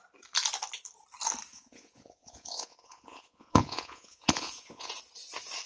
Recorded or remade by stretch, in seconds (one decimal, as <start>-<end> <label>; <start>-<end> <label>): 0.0-1.5 recorded; 1.5-4.9 remade; 4.9-5.7 recorded